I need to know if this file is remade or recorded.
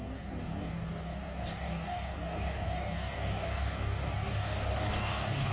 remade